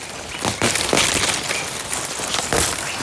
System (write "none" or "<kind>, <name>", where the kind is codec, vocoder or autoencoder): none